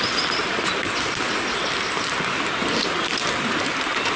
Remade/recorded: recorded